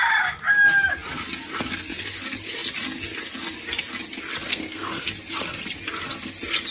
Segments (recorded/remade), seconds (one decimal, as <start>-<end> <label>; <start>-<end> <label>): 0.0-4.5 recorded; 4.5-5.1 remade; 5.1-6.7 recorded